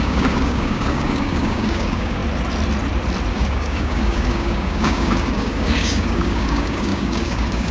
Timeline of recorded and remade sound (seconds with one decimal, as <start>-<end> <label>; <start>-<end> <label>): 0.0-2.2 remade; 2.2-3.3 recorded; 3.3-7.7 remade

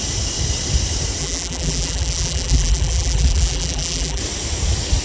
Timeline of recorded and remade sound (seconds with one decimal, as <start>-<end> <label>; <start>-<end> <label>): 0.0-1.2 recorded; 1.2-4.2 remade; 4.2-5.0 recorded